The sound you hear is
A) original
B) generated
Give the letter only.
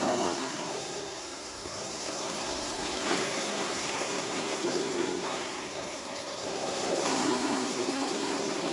B